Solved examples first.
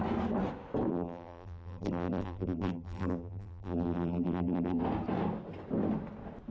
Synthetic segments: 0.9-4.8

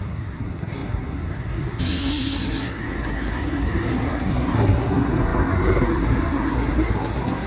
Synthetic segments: 0.0-7.5

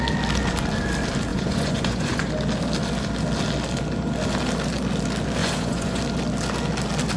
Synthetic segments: 1.3-2.3; 5.4-6.0

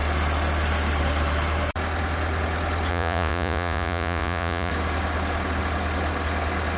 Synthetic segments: 2.9-4.7

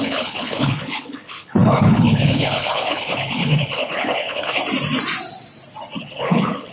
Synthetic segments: 0.0-4.6; 6.0-6.7

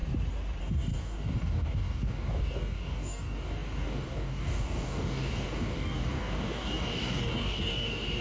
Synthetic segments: 0.6-8.2